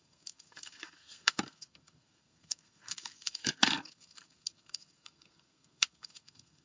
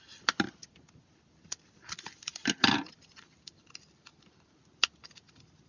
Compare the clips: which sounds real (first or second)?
second